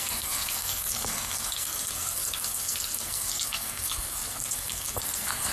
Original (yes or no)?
no